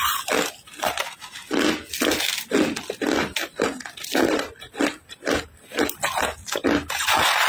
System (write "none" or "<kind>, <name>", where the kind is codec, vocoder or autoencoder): none